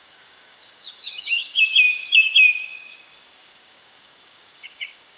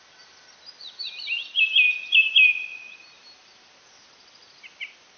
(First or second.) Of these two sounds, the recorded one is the second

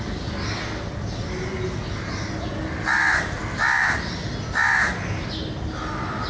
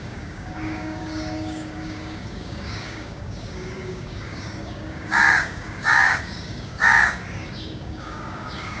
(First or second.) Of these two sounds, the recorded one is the first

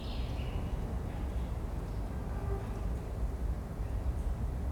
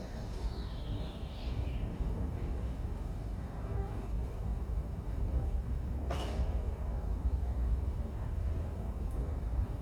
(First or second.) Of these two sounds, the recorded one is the first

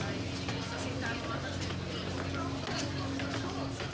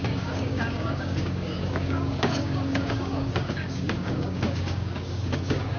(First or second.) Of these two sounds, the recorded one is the first